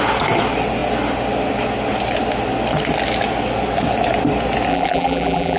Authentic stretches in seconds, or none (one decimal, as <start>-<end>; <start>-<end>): 0.0-4.7